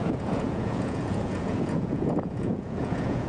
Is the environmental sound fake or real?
fake